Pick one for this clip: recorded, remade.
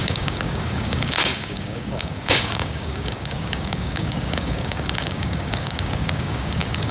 remade